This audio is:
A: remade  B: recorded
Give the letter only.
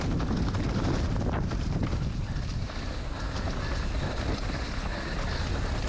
B